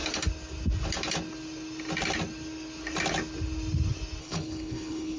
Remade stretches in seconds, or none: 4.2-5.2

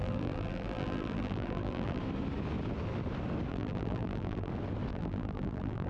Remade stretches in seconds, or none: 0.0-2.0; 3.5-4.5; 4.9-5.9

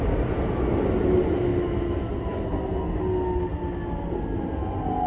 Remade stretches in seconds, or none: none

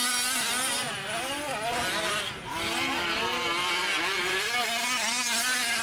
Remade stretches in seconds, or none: none

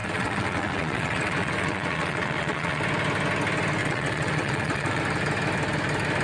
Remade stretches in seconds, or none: 0.0-2.8; 3.8-5.0

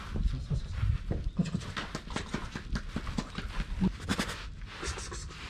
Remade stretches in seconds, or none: none

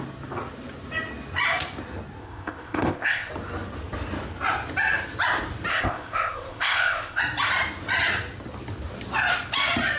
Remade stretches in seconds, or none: 2.2-3.3; 5.7-7.2

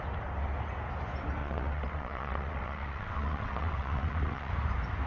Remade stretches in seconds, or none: 1.4-4.5